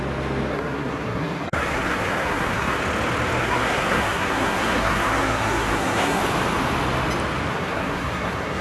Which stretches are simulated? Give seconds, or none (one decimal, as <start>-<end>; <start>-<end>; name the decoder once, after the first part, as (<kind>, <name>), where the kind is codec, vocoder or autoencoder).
0.5-2.8 (codec, SNAC); 3.4-6.2; 7.5-8.6